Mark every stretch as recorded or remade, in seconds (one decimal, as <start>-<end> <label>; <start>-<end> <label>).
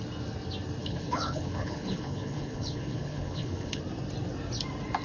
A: 0.0-0.8 recorded; 0.8-3.8 remade; 3.8-5.0 recorded